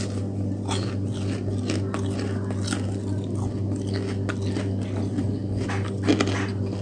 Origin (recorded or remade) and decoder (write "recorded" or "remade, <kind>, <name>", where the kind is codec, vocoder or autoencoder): recorded